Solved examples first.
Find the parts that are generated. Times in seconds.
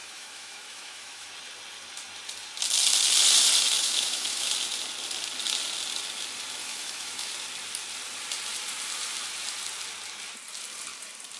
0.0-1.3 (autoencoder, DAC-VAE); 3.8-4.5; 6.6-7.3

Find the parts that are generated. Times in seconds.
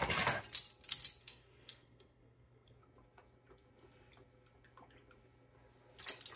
1.2-2.8 (codec, SNAC)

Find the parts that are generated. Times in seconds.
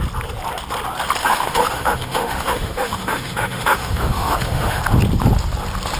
1.2-4.8 (autoencoder, DAC-VAE)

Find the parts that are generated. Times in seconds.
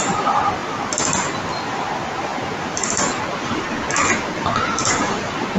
none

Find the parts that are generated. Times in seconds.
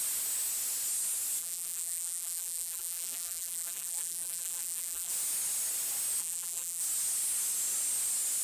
1.4-5.1 (vocoder, BigVGAN v2); 6.2-6.8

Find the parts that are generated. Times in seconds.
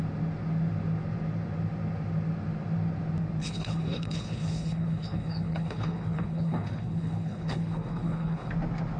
3.4-8.5 (codec, HILCodec)